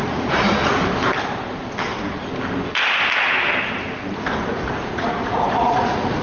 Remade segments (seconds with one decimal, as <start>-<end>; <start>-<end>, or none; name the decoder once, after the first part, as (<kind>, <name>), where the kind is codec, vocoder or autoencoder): 0.0-0.8 (vocoder, Vocos); 4.5-6.2